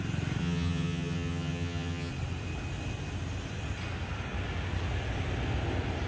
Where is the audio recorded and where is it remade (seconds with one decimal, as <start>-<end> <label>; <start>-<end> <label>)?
0.0-0.4 recorded; 0.4-2.1 remade; 2.1-6.1 recorded